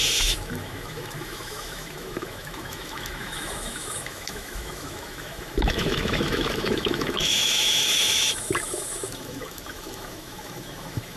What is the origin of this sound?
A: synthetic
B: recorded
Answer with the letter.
A